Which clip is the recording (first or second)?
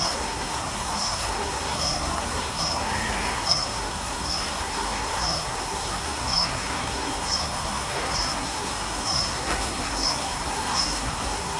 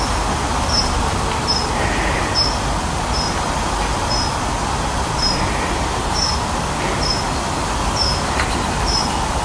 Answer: second